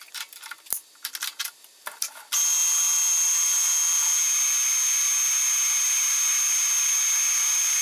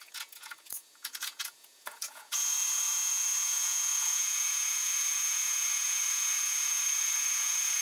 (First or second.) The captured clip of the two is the first